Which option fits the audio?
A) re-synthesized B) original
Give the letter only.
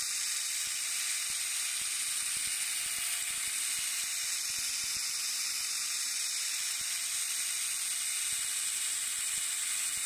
B